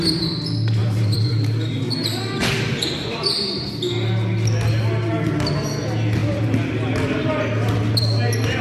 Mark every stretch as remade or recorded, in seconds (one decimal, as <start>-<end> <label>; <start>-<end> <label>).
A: 0.0-0.8 recorded; 0.8-3.7 remade; 3.7-8.6 recorded